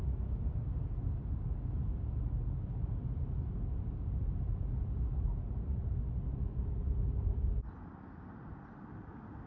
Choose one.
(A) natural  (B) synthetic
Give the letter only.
A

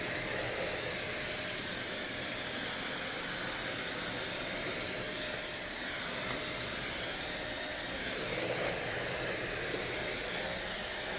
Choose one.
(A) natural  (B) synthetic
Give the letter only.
A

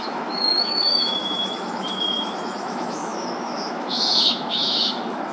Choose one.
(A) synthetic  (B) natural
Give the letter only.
A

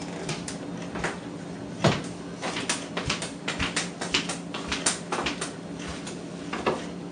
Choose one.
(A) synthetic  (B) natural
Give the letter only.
B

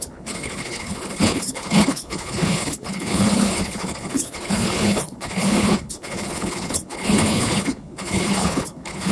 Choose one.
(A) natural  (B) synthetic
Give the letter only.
B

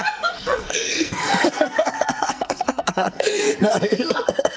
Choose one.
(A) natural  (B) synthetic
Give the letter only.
B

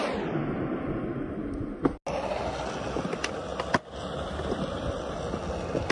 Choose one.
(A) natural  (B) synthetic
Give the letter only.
A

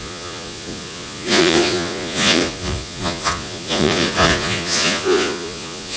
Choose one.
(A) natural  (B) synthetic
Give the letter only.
B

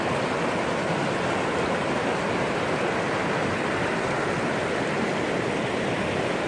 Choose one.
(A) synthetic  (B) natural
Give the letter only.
B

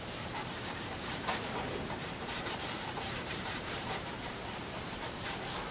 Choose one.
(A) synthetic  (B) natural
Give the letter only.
A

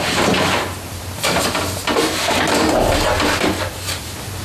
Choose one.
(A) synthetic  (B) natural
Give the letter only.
B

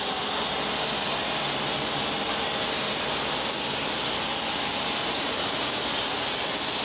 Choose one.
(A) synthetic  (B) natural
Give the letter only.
B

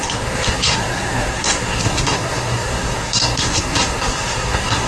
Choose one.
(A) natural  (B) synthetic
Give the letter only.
B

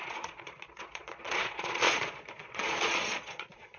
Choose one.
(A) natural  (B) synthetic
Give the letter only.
B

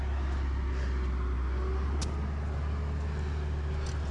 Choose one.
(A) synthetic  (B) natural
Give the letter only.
B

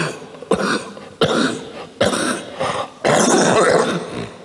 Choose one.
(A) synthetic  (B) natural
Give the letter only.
B